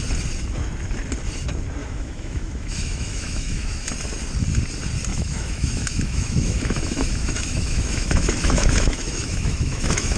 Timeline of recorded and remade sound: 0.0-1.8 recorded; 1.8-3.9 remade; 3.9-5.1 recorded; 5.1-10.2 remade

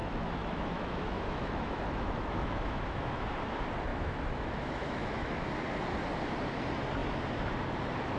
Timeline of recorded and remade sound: 0.0-3.3 remade; 3.3-3.9 recorded; 3.9-5.5 remade; 5.5-8.2 recorded

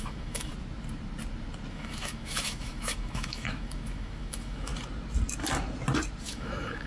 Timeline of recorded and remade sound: 0.0-0.5 remade; 0.5-1.7 recorded; 1.7-4.7 remade; 4.7-6.2 recorded; 6.2-6.9 remade

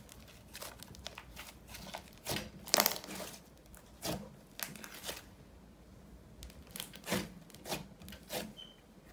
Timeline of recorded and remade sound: 0.0-9.1 recorded

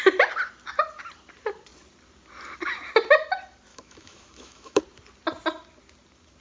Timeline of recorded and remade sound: 0.0-3.7 recorded; 3.7-4.8 remade; 4.8-6.4 recorded